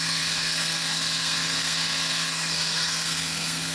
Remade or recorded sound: remade